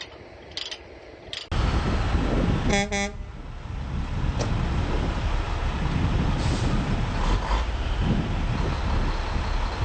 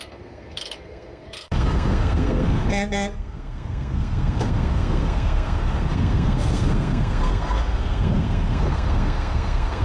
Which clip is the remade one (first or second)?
second